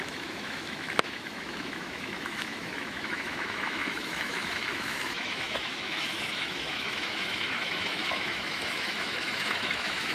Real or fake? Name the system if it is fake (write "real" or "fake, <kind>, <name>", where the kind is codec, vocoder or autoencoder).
fake, autoencoder, DAC-VAE